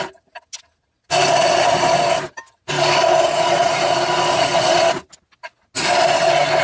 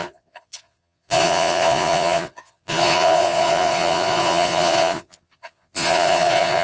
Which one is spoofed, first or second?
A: second